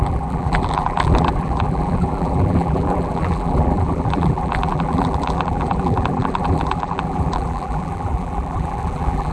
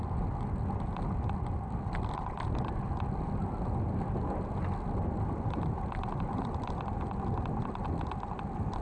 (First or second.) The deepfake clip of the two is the first